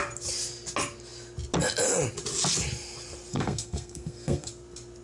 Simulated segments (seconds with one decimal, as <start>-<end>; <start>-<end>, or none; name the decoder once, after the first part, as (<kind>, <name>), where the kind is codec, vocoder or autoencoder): 3.3-4.5 (codec, SNAC)